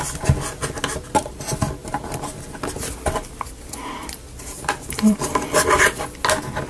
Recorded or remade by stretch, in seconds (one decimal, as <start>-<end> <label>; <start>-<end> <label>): 0.0-6.7 recorded